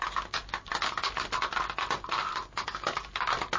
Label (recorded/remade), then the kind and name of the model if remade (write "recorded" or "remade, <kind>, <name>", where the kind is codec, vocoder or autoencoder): recorded